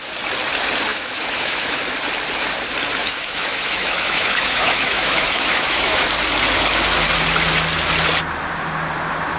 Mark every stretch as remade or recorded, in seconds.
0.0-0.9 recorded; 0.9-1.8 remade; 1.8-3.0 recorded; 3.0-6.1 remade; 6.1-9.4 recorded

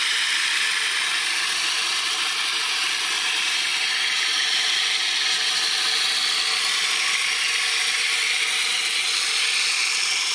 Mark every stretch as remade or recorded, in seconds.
0.0-10.3 recorded